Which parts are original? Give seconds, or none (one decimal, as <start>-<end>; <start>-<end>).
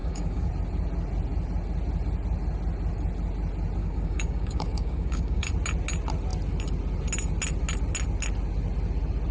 0.5-3.8; 5.5-9.3